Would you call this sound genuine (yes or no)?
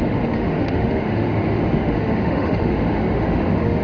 no